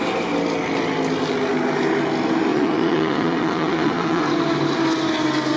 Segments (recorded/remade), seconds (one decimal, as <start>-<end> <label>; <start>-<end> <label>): 0.0-2.5 recorded; 2.5-4.2 remade; 4.2-5.6 recorded